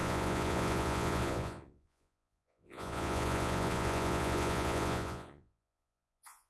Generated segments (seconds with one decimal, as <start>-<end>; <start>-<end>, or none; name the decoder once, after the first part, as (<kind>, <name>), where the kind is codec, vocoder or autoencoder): 0.0-6.5 (vocoder, Vocos)